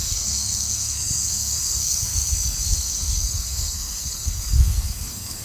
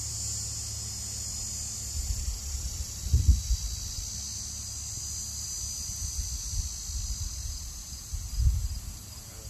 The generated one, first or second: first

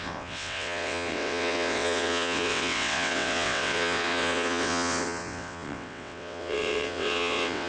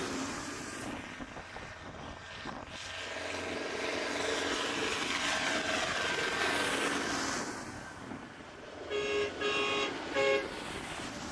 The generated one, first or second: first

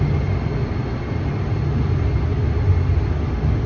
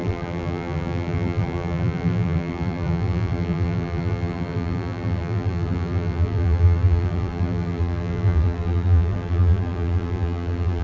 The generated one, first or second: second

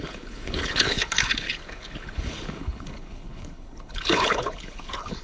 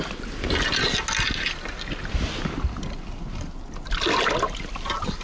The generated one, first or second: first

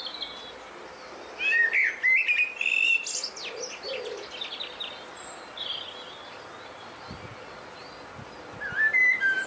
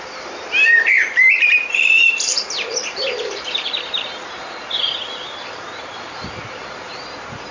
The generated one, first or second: second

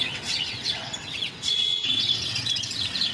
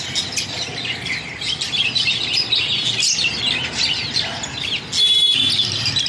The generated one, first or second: first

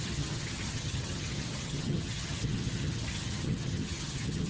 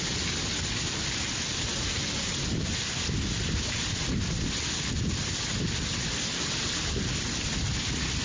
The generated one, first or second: first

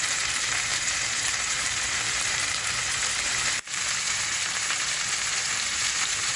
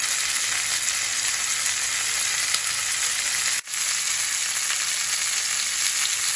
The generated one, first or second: first